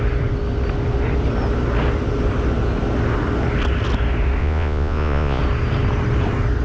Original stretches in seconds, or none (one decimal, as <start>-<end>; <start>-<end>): 0.0-4.4; 5.4-6.6